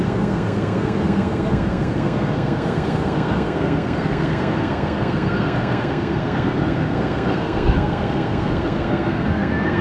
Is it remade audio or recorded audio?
remade